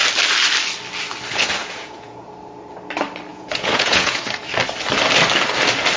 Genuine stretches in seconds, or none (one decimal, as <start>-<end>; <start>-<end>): 0.0-1.6; 2.3-3.3; 4.2-6.0